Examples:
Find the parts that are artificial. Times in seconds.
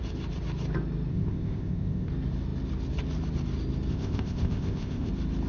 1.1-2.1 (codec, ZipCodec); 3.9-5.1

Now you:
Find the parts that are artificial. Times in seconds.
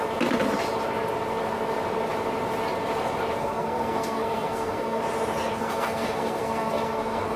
3.4-5.0 (codec, SNAC); 5.6-7.4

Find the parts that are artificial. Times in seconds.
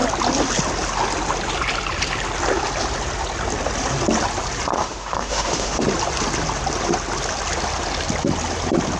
4.8-5.8 (autoencoder, DAC-VAE)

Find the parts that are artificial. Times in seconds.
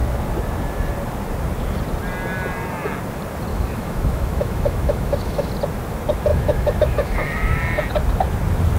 3.5-5.5 (autoencoder, DAC-VAE); 6.3-7.8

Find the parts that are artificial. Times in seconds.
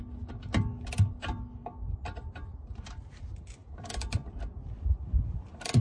none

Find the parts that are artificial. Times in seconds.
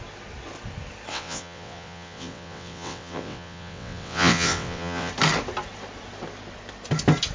1.1-5.1 (vocoder, WaveNeXt)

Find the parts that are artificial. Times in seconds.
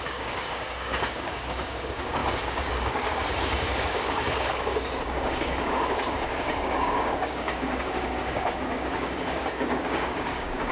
0.0-2.2 (codec, DAC); 2.7-10.7